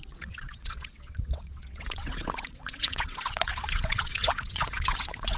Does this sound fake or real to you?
fake